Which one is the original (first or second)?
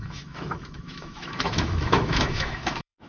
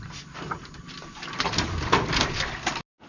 second